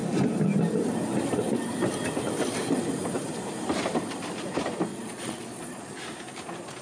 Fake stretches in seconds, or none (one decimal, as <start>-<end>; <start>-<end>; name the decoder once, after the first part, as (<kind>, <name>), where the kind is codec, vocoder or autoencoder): 4.9-5.8 (vocoder, Vocos)